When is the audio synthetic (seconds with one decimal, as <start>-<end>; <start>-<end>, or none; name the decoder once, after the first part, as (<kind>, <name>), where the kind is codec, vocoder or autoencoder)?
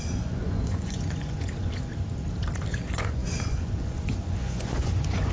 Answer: 0.0-1.9 (vocoder, Vocos); 2.7-5.3